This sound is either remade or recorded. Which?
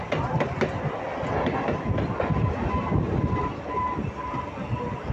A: recorded